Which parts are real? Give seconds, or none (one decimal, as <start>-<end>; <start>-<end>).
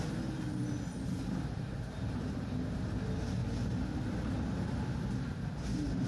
0.0-6.1